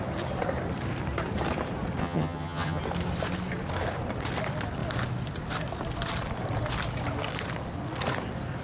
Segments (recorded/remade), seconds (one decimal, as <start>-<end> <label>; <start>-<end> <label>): 0.0-2.0 recorded; 2.0-2.8 remade; 2.8-8.6 recorded